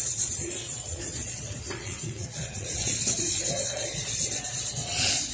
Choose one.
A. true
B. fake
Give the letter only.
B